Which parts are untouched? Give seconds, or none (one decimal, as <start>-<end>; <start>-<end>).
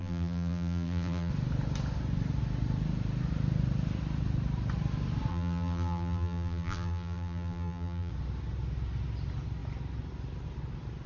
1.3-5.3; 8.1-11.1